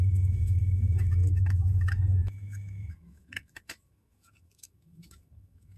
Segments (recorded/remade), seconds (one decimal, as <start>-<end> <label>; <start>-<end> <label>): 0.0-5.8 remade